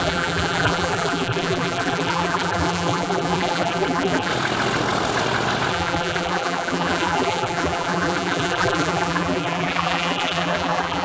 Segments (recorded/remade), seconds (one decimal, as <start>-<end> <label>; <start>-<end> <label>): 0.0-4.3 remade; 4.3-5.7 recorded; 5.7-11.0 remade